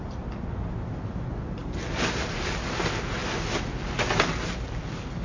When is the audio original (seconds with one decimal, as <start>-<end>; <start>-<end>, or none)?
0.0-1.6; 2.8-5.2